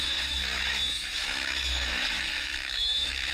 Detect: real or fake fake